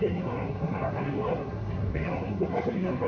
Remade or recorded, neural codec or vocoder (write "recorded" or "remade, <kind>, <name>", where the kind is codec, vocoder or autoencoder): remade, codec, SNAC